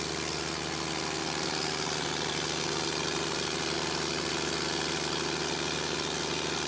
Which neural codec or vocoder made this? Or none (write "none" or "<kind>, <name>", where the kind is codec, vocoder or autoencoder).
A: none